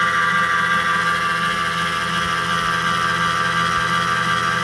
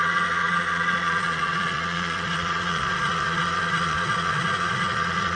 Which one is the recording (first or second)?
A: first